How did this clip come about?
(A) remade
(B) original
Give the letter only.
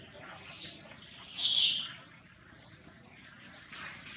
B